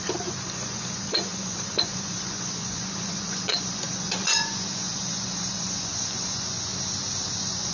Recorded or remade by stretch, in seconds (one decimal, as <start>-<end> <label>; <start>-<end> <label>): 0.0-6.7 remade; 6.7-7.3 recorded; 7.3-7.7 remade